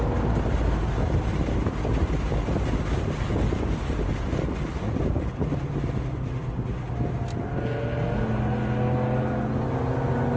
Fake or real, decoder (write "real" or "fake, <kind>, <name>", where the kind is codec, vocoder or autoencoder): real